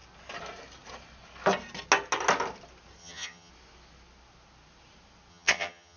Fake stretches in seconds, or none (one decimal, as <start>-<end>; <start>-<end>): 3.0-3.5; 5.3-6.0